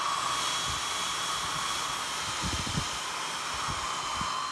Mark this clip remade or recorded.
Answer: recorded